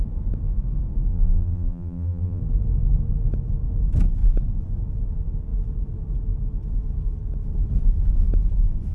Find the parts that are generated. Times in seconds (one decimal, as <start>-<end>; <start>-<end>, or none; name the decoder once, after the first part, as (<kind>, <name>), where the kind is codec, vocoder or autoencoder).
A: 1.1-2.4 (vocoder, BigVGAN v2)